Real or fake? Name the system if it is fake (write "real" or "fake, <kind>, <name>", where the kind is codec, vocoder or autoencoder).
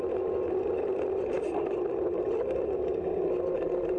real